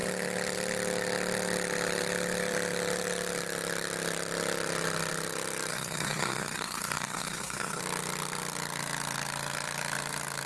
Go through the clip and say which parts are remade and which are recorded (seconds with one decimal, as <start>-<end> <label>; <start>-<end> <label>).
0.0-5.7 recorded; 5.7-7.8 remade; 7.8-10.5 recorded